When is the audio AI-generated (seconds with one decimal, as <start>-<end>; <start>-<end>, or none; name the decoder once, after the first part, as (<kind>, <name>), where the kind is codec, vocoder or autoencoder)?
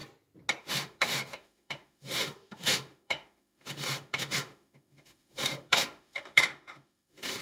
0.6-7.4 (autoencoder, DAC-VAE)